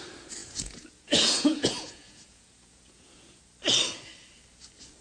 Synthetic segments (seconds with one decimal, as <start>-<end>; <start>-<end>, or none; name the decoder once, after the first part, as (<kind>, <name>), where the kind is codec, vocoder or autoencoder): 0.4-3.4 (vocoder, Vocos)